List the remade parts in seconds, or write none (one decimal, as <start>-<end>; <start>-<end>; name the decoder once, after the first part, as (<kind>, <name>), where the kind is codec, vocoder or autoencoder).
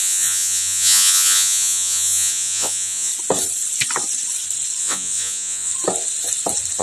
0.0-3.1 (vocoder, Vocos); 4.8-5.7